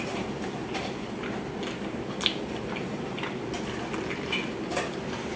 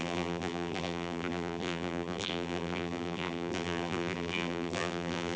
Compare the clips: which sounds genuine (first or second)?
first